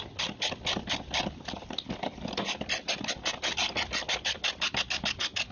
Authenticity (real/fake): real